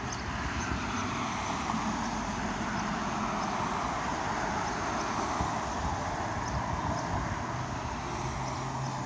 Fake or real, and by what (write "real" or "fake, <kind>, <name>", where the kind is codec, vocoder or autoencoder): real